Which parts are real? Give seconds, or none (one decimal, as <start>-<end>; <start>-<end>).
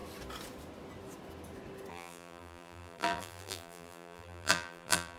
0.0-1.9